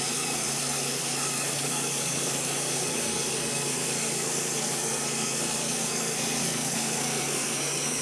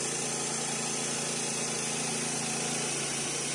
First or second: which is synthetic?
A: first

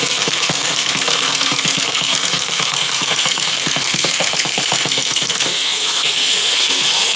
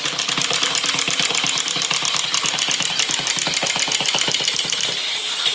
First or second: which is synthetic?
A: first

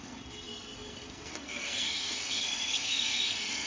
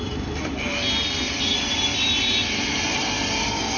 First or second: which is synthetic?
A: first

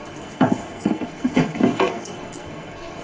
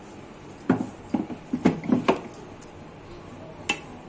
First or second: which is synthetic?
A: first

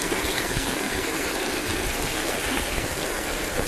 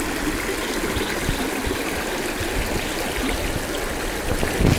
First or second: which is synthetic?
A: first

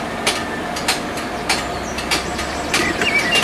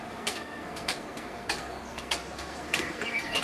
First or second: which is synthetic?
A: second